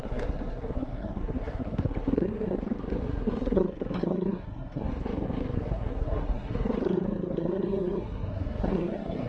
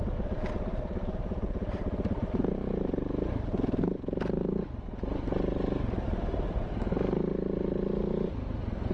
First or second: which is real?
second